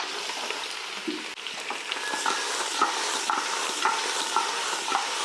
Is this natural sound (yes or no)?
yes